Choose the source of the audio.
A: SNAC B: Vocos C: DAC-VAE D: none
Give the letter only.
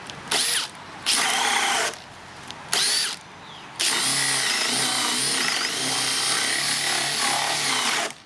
D